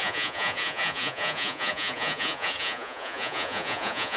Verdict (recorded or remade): remade